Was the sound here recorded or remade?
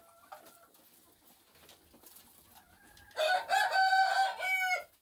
recorded